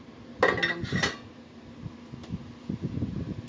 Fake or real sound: real